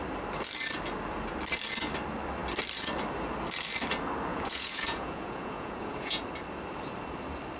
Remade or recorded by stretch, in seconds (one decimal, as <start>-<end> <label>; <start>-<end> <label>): 0.0-4.3 recorded; 4.3-6.2 remade; 6.2-7.6 recorded